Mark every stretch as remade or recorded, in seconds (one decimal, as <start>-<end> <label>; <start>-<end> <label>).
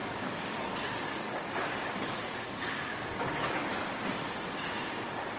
0.0-3.7 remade; 3.7-5.4 recorded